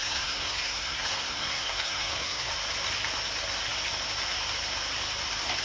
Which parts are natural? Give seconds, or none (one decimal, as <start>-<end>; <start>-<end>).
2.5-5.6

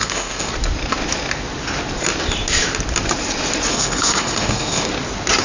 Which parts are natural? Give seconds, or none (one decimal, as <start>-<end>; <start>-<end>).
0.5-3.7; 4.9-5.4

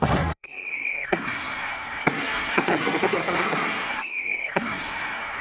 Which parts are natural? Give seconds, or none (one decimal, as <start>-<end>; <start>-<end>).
none

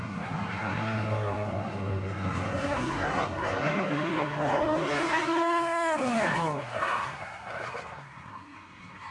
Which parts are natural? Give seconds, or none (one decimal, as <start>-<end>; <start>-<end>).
none

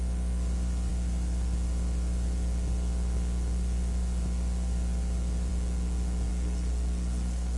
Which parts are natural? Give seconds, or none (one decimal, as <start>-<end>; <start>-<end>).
0.0-6.3